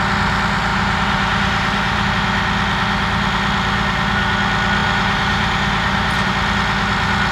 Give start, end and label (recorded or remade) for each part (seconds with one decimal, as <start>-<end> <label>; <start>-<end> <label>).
0.0-0.7 recorded; 0.7-2.1 remade; 2.1-4.8 recorded; 4.8-6.3 remade; 6.3-7.3 recorded